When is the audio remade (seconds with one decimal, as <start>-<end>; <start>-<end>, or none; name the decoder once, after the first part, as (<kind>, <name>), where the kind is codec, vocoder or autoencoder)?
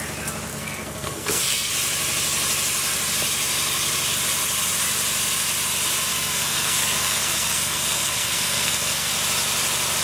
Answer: 0.5-1.7 (codec, SNAC); 6.1-9.1